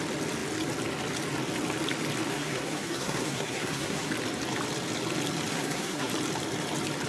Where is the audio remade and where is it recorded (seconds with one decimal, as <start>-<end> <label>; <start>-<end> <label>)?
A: 0.0-2.3 recorded; 2.3-4.1 remade; 4.1-5.5 recorded; 5.5-6.1 remade; 6.1-7.1 recorded